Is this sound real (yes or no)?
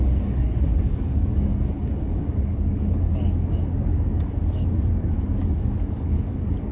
no